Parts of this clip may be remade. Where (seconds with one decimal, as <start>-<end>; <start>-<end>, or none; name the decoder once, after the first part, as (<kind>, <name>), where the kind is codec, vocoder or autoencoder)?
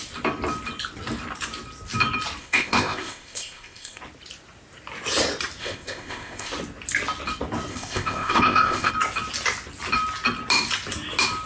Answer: 2.4-4.0 (codec, ZipCodec); 5.6-6.5; 7.7-8.9